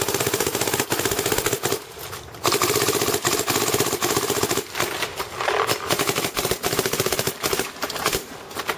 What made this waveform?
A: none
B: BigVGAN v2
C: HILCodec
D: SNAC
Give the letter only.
B